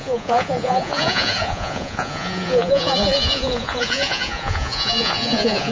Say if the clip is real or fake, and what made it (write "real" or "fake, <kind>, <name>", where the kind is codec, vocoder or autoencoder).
fake, vocoder, Vocos